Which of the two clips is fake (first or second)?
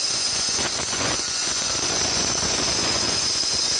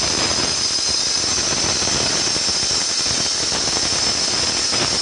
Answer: first